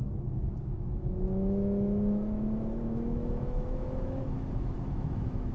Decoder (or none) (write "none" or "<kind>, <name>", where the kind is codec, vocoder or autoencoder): autoencoder, DAC-VAE